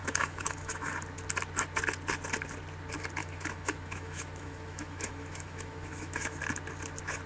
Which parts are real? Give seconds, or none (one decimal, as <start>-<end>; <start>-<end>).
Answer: 0.9-3.2; 6.4-7.3